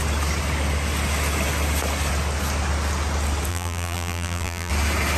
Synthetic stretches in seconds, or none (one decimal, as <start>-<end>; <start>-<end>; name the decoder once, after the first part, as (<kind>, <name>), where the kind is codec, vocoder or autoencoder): 3.5-4.7 (vocoder, BigVGAN v2)